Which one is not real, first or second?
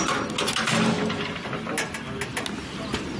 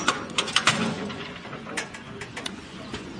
second